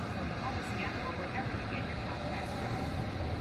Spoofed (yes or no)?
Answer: yes